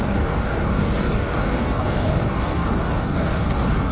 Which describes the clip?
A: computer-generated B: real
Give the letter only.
A